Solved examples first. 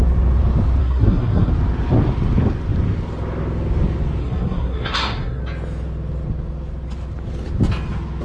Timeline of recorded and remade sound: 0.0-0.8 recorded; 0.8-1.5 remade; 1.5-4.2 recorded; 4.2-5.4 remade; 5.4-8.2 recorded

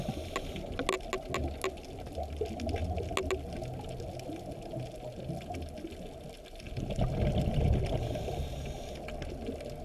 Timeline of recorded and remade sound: 0.0-9.8 recorded

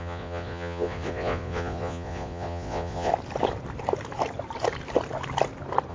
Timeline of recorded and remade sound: 0.0-3.1 remade; 3.1-5.9 recorded

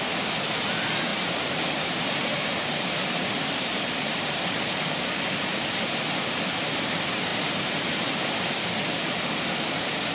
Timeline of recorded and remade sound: 0.0-1.1 recorded; 1.1-6.0 remade; 6.0-7.3 recorded; 7.3-8.7 remade; 8.7-10.1 recorded

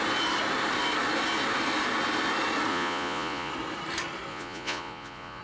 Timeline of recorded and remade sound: 0.0-2.7 recorded; 2.7-3.5 remade; 3.5-4.3 recorded; 4.3-5.4 remade

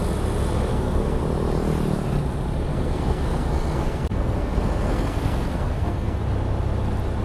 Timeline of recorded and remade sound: 0.0-0.7 recorded; 0.7-1.2 remade; 1.2-2.7 recorded; 2.7-6.2 remade; 6.2-7.2 recorded

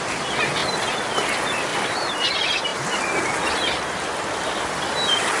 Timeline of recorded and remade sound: 0.0-1.7 recorded; 1.7-2.3 remade; 2.3-5.4 recorded